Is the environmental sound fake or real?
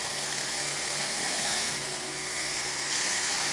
fake